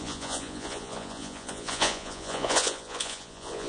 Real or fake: fake